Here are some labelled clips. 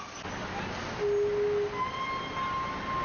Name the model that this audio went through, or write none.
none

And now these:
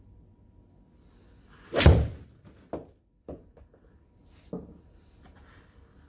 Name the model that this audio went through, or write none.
none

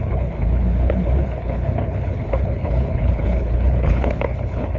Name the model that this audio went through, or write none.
codec, HILCodec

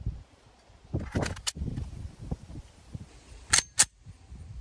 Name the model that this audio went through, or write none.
none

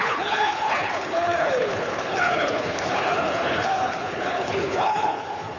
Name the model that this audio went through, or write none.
codec, HILCodec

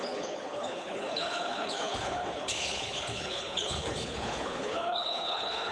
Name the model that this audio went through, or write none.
codec, HILCodec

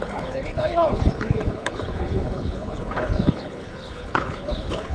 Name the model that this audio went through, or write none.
codec, HILCodec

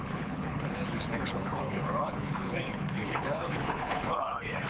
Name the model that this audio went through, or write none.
codec, HILCodec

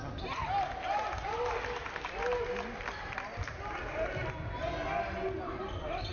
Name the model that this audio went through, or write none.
none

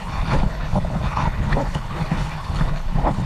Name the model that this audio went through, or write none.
codec, HILCodec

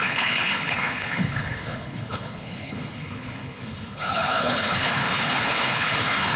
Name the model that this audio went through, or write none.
codec, HILCodec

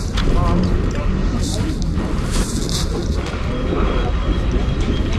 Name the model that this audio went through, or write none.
none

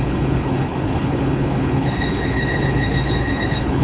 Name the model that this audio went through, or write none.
codec, HILCodec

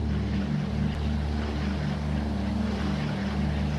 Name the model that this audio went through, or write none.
none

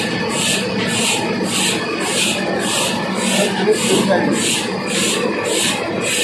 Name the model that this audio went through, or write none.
none